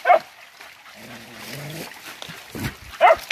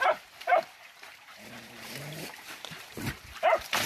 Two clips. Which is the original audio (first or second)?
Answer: first